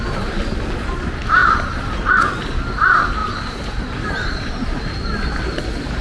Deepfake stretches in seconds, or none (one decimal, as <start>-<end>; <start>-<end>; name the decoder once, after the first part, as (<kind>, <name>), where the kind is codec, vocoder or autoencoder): 1.4-2.1 (vocoder, BigVGAN v2); 3.2-4.5